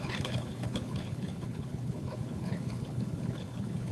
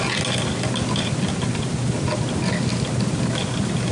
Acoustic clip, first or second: second